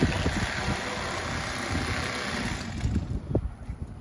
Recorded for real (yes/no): yes